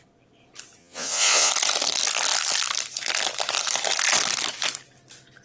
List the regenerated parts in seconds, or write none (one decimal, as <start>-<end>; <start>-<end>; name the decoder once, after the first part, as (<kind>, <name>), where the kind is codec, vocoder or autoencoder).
0.8-1.5 (vocoder, Vocos)